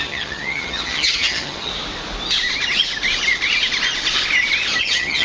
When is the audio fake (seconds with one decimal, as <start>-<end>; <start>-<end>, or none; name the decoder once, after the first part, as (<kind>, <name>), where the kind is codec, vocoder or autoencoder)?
0.0-1.7 (vocoder, HiFi-GAN); 4.8-5.2